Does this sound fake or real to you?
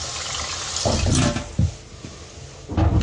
real